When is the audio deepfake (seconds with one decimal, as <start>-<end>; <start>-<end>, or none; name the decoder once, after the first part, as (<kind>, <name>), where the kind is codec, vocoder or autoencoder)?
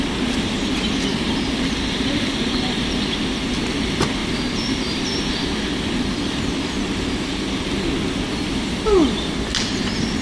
4.2-5.2 (vocoder, BigVGAN v2)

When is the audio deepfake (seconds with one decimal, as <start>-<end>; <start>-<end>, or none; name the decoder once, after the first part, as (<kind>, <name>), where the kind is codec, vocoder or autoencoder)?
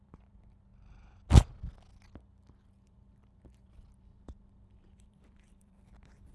0.0-0.7 (vocoder, BigVGAN v2); 2.7-6.3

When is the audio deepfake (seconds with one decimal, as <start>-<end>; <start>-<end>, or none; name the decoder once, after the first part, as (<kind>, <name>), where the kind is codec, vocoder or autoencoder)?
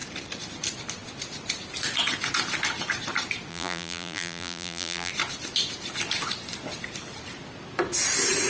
3.5-5.1 (vocoder, BigVGAN v2)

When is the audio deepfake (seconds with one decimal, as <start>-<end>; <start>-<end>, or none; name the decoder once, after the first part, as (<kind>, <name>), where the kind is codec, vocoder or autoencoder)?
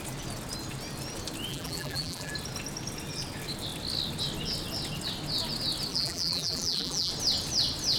1.5-2.3 (vocoder, BigVGAN v2); 5.9-7.1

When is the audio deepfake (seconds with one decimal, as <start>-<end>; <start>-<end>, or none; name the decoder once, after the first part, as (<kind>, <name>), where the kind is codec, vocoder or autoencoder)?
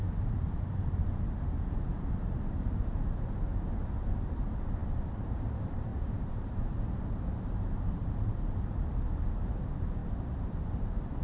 0.0-11.2 (vocoder, BigVGAN v2)